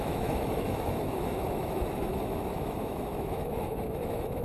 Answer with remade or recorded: remade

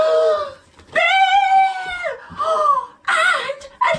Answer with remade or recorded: recorded